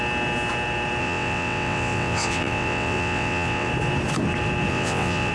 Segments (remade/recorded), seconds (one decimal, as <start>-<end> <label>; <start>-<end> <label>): 0.0-1.0 recorded; 1.0-3.7 remade; 3.7-4.7 recorded; 4.7-5.3 remade